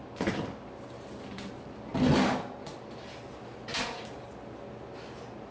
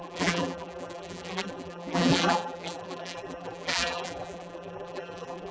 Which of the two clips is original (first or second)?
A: first